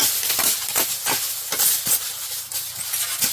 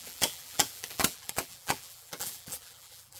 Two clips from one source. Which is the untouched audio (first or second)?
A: first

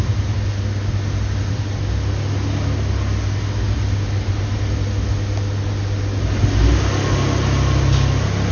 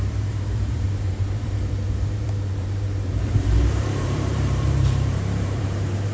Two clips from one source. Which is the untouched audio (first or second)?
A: first